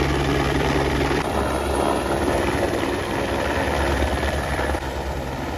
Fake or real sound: fake